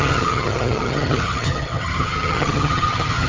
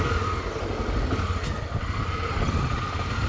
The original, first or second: second